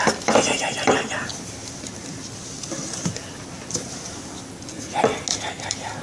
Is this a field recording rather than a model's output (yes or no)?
yes